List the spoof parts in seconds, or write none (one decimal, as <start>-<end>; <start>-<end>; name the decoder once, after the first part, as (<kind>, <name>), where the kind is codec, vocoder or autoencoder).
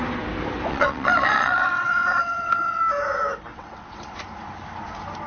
0.7-2.8 (vocoder, WaveNeXt); 3.5-4.2